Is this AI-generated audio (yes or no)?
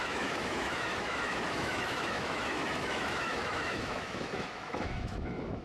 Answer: yes